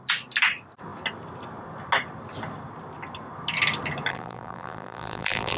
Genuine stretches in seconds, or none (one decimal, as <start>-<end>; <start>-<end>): 0.0-4.1